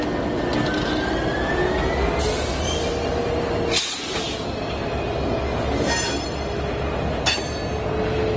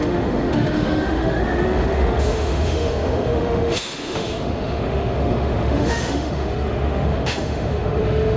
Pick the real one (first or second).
first